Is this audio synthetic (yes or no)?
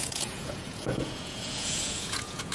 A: yes